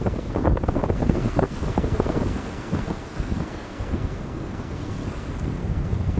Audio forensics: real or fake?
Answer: fake